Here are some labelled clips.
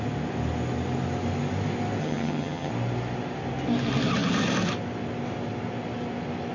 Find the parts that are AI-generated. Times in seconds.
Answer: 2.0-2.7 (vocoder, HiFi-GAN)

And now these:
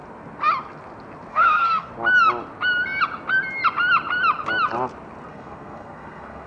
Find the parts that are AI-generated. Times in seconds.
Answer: 1.3-1.9 (codec, SNAC); 5.3-6.5

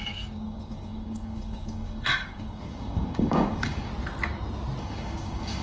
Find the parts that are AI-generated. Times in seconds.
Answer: 0.0-3.9 (codec, DAC); 4.8-5.6